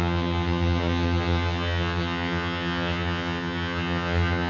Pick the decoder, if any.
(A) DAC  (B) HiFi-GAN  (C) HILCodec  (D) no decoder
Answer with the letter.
B